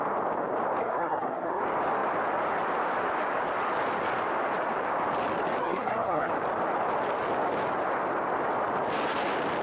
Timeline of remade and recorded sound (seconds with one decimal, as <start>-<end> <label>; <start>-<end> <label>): 0.0-0.8 recorded; 0.8-1.6 remade; 1.6-5.6 recorded; 5.6-6.3 remade; 6.3-9.6 recorded